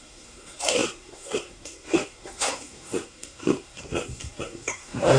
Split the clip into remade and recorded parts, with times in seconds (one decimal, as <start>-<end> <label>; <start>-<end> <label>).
0.0-5.2 remade